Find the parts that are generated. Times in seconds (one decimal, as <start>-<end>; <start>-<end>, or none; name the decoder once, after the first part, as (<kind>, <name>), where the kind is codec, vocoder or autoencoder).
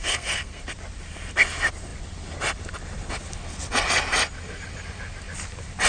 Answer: 0.0-0.6 (codec, SNAC)